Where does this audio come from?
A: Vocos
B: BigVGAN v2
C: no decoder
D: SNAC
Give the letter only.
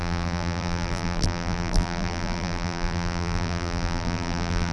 B